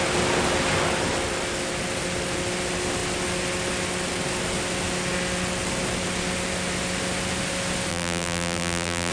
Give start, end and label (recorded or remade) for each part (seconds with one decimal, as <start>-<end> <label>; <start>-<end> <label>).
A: 0.0-7.9 recorded; 7.9-9.1 remade